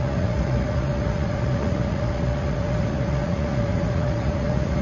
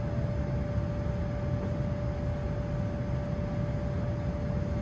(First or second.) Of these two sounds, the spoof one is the first